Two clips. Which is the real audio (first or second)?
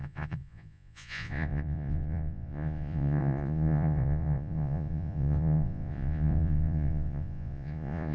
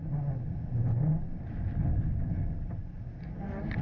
second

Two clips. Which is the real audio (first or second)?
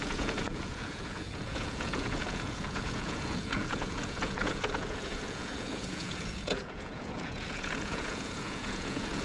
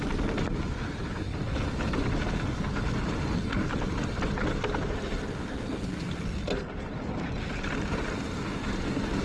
second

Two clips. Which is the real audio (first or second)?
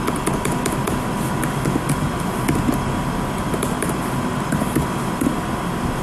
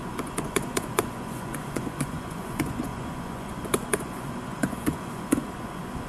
first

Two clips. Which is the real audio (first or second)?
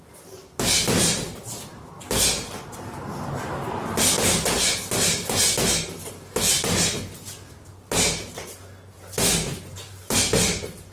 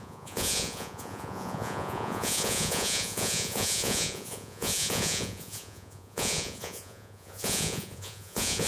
first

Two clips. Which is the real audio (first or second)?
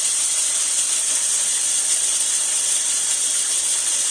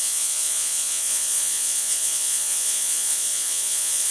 first